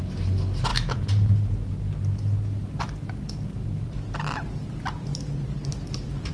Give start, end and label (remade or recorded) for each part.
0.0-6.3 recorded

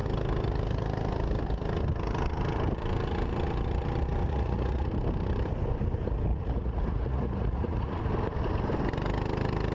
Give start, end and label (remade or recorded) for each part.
0.0-4.2 recorded; 4.2-4.9 remade; 4.9-6.3 recorded; 6.3-8.0 remade; 8.0-9.7 recorded

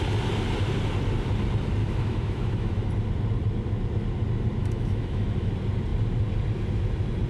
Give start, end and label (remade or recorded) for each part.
0.0-1.8 recorded; 1.8-2.9 remade; 2.9-4.6 recorded; 4.6-5.5 remade; 5.5-7.3 recorded

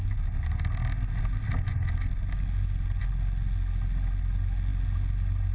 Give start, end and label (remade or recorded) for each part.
0.0-5.5 recorded

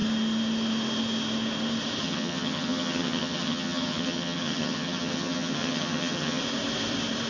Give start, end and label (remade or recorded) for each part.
0.0-2.0 recorded; 2.0-6.4 remade; 6.4-7.3 recorded

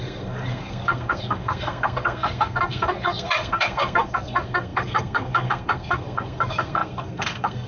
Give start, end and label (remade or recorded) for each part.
0.0-7.7 remade

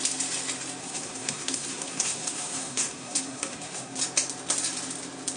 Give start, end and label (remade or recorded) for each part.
0.0-0.8 recorded; 0.8-4.0 remade; 4.0-5.4 recorded